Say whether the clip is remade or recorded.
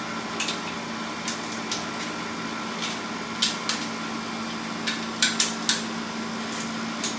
recorded